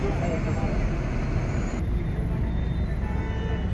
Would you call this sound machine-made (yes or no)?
no